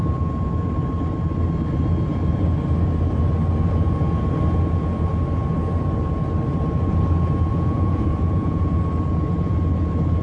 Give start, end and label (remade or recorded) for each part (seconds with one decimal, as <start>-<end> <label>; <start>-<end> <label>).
0.0-7.5 recorded; 7.5-8.8 remade; 8.8-10.2 recorded